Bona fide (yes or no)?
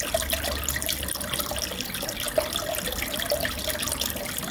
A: yes